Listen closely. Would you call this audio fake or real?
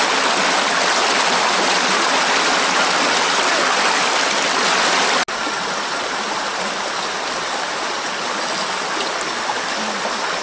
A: real